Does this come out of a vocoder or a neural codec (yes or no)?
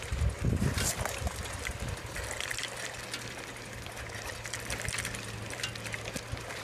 no